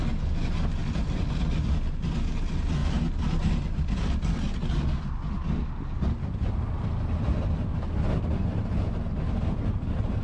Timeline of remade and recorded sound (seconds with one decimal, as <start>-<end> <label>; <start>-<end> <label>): 0.0-10.2 recorded

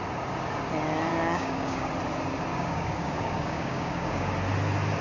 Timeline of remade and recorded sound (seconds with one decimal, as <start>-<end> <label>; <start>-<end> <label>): 0.0-1.1 recorded; 1.1-1.9 remade; 1.9-2.5 recorded; 2.5-4.3 remade; 4.3-5.0 recorded

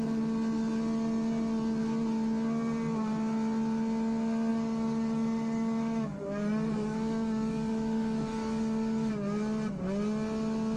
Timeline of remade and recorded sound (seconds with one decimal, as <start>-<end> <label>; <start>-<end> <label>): 0.0-4.5 recorded; 4.5-9.1 remade; 9.1-10.8 recorded

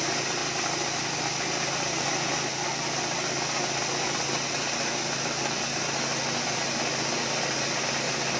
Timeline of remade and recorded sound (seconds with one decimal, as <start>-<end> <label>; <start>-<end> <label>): 0.0-8.4 recorded

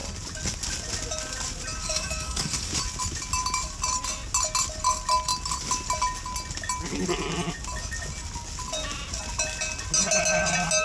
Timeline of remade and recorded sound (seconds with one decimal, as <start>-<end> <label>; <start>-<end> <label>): 0.0-1.8 recorded; 1.8-2.7 remade; 2.7-10.8 recorded

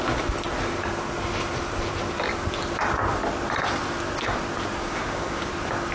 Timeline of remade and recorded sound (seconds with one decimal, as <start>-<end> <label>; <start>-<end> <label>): 0.0-4.8 recorded; 4.8-5.5 remade; 5.5-5.9 recorded

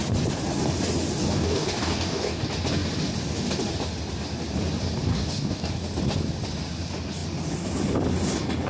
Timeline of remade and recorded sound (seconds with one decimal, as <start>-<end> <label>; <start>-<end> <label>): 0.0-1.2 recorded; 1.2-2.4 remade; 2.4-5.1 recorded; 5.1-5.7 remade; 5.7-8.7 recorded

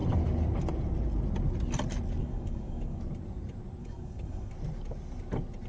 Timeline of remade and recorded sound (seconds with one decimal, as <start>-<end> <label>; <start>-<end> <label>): 0.0-2.2 recorded; 2.2-3.0 remade; 3.0-3.8 recorded; 3.8-4.5 remade; 4.5-5.7 recorded